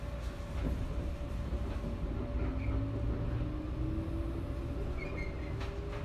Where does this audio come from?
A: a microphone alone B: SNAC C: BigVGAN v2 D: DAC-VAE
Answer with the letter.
A